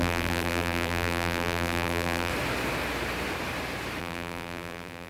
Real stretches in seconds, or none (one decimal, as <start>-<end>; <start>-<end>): 2.3-4.0